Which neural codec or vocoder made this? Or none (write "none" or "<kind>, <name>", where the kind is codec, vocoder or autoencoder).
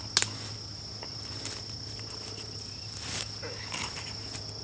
none